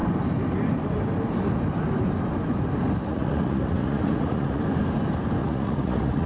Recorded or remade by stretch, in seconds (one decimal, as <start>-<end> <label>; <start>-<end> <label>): 0.0-3.1 recorded; 3.1-4.6 remade; 4.6-5.4 recorded; 5.4-6.3 remade